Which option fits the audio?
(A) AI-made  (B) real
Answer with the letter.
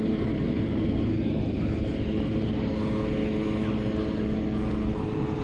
B